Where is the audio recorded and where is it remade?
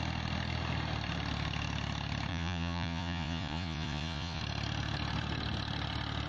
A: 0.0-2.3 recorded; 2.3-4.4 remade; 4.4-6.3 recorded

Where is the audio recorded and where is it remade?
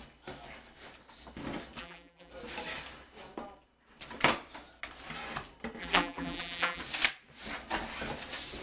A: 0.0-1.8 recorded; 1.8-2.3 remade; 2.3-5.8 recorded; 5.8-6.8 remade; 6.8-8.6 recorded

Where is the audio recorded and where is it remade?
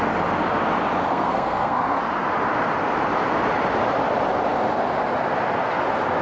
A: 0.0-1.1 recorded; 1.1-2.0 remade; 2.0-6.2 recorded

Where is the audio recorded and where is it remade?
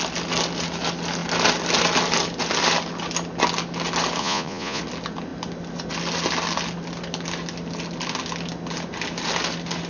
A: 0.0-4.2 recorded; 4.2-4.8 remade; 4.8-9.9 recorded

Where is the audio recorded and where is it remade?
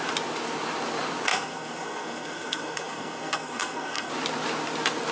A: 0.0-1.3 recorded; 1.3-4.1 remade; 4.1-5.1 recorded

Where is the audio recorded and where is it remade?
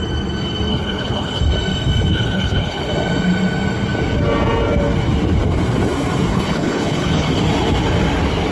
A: 0.0-0.7 recorded; 0.7-1.4 remade; 1.4-2.1 recorded; 2.1-2.9 remade; 2.9-6.3 recorded; 6.3-7.3 remade; 7.3-8.5 recorded